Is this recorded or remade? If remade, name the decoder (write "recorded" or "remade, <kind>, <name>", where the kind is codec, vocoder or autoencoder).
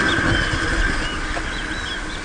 recorded